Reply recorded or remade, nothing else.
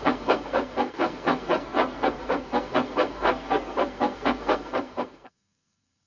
remade